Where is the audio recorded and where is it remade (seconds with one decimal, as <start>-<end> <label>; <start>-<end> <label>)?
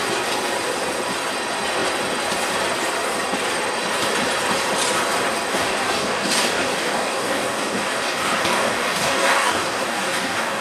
0.0-5.5 recorded; 5.5-10.6 remade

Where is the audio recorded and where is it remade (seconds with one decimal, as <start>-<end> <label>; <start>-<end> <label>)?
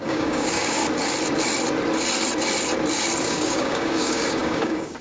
0.0-0.8 remade; 0.8-3.2 recorded; 3.2-5.0 remade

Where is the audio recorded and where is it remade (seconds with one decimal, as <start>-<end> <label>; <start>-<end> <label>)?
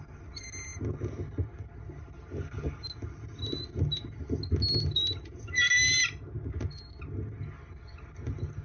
0.0-8.6 recorded